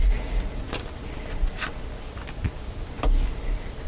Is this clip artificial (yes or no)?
no